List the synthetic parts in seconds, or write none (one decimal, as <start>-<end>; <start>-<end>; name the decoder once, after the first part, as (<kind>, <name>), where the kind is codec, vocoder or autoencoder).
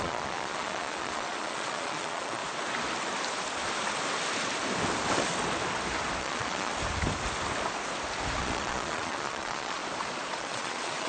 0.0-2.4 (vocoder, Vocos); 6.2-6.7; 8.4-9.8; 10.4-11.1